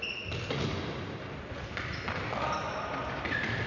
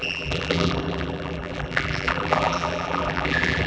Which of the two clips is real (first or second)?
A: first